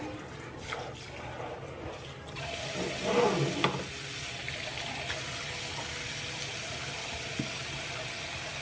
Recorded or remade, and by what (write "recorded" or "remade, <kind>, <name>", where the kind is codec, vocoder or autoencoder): recorded